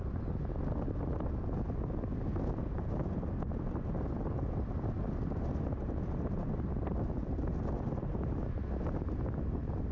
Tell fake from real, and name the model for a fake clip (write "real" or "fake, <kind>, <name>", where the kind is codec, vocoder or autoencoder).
real